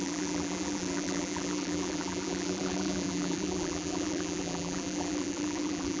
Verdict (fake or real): fake